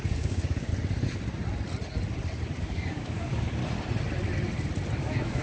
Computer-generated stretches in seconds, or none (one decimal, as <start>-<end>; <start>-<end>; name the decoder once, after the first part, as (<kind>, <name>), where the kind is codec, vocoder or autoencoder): 0.0-0.7 (codec, DAC); 2.6-3.6; 5.0-5.4